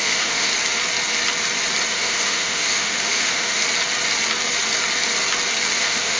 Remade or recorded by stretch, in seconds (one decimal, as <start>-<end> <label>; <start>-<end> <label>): 0.0-0.5 remade; 0.5-1.9 recorded; 1.9-3.6 remade; 3.6-5.8 recorded; 5.8-6.2 remade